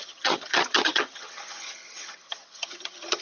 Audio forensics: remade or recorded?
remade